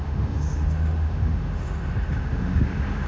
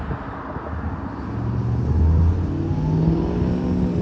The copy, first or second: first